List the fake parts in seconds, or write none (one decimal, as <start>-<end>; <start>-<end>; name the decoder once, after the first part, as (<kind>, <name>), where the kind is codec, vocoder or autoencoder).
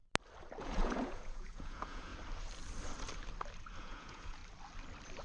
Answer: 0.6-2.1 (vocoder, Vocos); 3.8-4.4